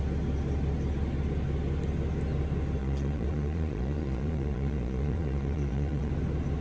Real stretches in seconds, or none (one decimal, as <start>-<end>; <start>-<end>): 0.0-2.8; 6.1-6.6